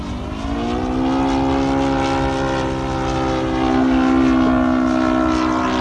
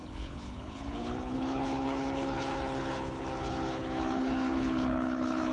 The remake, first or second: second